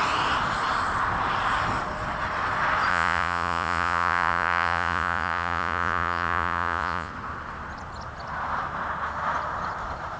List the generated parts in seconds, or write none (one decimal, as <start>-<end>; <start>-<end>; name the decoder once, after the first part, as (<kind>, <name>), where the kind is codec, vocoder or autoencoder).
2.9-7.1 (vocoder, Vocos)